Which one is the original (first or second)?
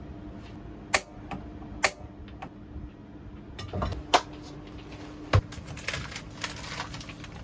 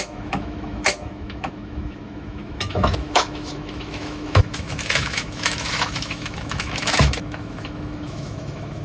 first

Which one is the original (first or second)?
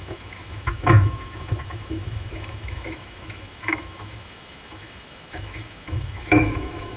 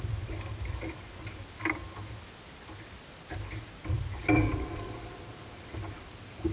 second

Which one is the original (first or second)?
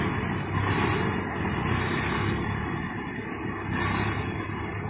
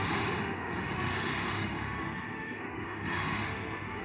first